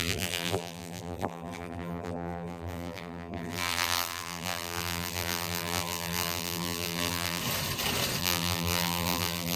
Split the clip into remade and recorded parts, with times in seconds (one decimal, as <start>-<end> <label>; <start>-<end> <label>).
0.0-7.4 remade; 7.4-8.2 recorded; 8.2-9.6 remade